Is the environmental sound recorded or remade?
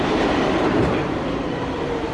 remade